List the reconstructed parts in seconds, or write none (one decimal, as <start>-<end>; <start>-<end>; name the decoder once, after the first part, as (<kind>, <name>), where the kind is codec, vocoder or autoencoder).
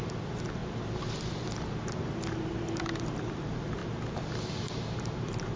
0.0-0.6 (vocoder, BigVGAN v2); 2.4-3.8; 5.0-5.6